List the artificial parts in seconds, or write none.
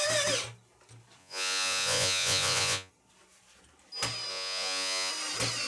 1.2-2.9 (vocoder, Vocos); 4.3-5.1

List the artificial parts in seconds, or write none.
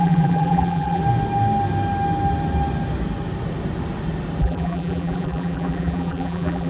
0.0-1.0 (vocoder, BigVGAN v2); 4.4-6.7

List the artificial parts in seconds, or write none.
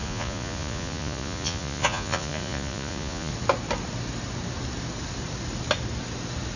0.0-3.3 (vocoder, Vocos)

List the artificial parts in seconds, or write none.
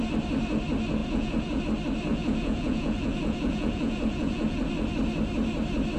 1.0-1.6 (vocoder, Vocos); 2.1-4.7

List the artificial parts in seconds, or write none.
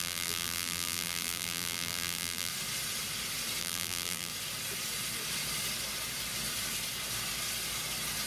0.0-2.5 (vocoder, BigVGAN v2); 3.6-4.3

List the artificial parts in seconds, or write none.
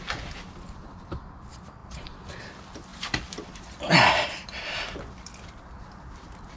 1.8-2.4 (vocoder, BigVGAN v2)